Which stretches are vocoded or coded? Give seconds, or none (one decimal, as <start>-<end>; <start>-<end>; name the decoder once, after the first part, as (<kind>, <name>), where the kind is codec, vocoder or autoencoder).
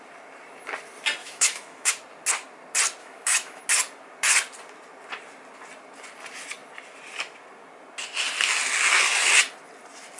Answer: 1.2-1.9 (autoencoder, DAC-VAE); 3.0-3.6